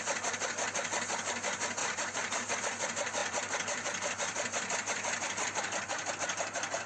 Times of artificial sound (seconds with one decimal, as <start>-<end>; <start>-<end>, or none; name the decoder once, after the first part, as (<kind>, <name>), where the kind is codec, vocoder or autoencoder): 1.8-2.6 (vocoder, BigVGAN v2); 3.2-6.1